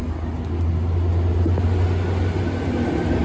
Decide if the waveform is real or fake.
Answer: real